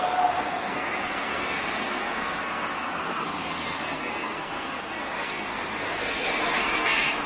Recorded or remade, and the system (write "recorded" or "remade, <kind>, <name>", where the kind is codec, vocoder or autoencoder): remade, codec, SNAC